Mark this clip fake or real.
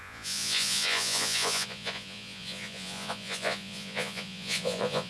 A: fake